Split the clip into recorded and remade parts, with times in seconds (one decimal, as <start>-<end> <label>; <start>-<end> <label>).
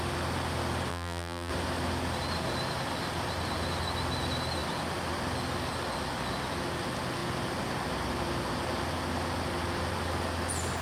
0.0-0.9 recorded; 0.9-1.5 remade; 1.5-10.8 recorded